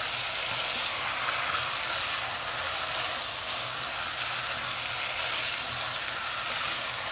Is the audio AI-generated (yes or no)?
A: no